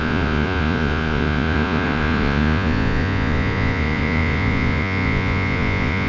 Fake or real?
fake